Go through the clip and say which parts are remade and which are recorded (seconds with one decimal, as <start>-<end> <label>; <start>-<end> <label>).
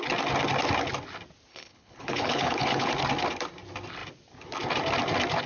0.0-1.5 recorded; 1.5-2.9 remade; 2.9-5.5 recorded